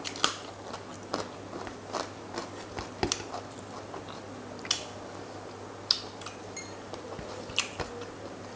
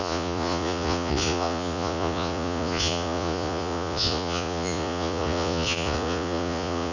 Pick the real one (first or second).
first